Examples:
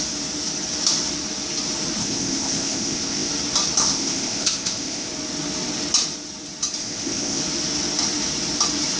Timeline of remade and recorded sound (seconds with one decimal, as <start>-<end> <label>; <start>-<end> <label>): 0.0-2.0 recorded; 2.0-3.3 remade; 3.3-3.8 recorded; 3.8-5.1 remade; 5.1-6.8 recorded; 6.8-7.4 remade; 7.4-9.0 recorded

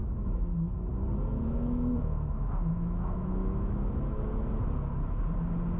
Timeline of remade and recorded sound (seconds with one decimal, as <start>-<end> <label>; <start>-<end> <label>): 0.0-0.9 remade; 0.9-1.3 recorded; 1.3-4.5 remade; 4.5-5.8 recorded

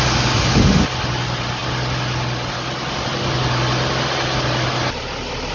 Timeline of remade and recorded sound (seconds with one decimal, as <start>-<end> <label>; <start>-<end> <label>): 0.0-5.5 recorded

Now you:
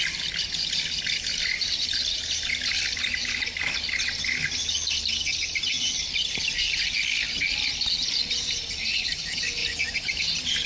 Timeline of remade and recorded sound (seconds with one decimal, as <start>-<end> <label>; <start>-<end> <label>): 0.0-9.6 recorded; 9.6-10.2 remade; 10.2-10.7 recorded